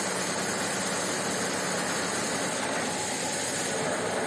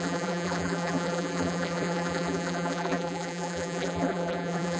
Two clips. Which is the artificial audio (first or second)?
second